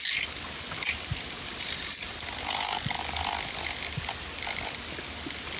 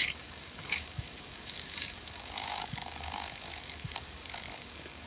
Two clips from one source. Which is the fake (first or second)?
second